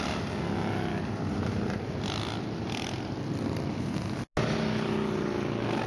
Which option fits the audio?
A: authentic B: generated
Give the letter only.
A